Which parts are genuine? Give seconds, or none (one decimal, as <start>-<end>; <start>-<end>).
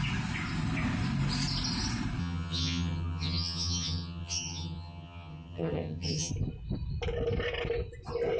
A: 0.0-2.2; 6.3-8.4